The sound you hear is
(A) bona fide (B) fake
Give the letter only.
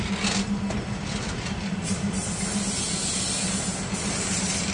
A